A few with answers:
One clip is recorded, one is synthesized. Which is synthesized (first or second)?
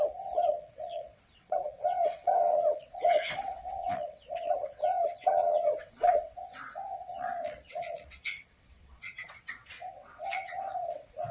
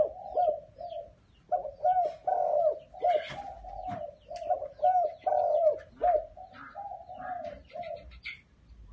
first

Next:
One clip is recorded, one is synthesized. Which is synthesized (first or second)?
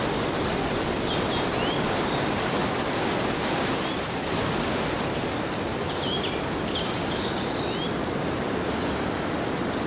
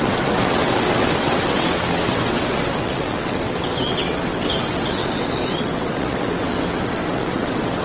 second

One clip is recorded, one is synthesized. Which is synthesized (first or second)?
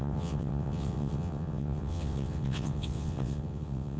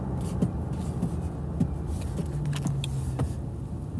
first